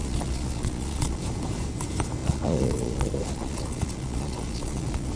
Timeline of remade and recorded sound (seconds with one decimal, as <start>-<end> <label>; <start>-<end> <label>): 0.0-1.2 remade; 1.2-2.2 recorded; 2.2-5.1 remade